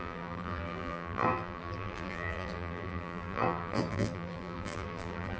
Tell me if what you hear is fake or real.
fake